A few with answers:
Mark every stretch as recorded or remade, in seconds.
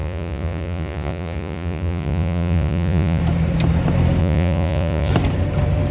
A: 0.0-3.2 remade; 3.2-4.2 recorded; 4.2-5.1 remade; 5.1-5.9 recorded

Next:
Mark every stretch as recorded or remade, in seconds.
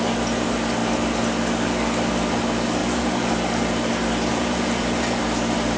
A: 0.0-2.8 recorded; 2.8-3.3 remade; 3.3-4.3 recorded; 4.3-5.2 remade; 5.2-5.8 recorded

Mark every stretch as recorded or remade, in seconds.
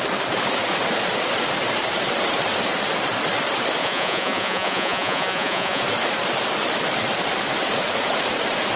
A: 0.0-3.8 recorded; 3.8-5.8 remade; 5.8-8.8 recorded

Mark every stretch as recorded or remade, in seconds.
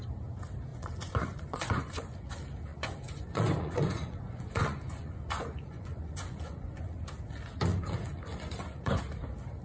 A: 0.0-0.7 recorded; 0.7-2.1 remade; 2.1-2.7 recorded; 2.7-7.0 remade; 7.0-7.7 recorded; 7.7-9.0 remade; 9.0-9.6 recorded